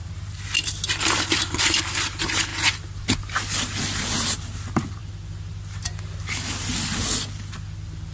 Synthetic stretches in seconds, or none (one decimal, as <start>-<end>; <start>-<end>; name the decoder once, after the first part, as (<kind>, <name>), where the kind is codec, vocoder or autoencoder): none